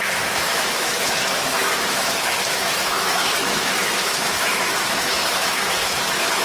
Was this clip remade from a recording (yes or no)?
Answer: yes